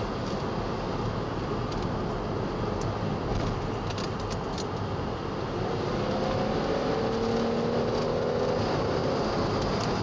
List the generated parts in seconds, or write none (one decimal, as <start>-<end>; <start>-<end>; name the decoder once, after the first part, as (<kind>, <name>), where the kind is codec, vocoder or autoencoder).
none